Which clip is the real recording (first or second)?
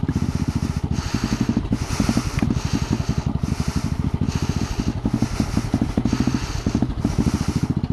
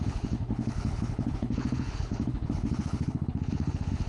first